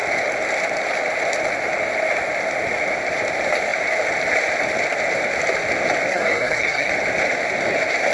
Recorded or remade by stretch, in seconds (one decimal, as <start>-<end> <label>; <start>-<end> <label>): 0.0-6.1 recorded; 6.1-6.9 remade; 6.9-8.1 recorded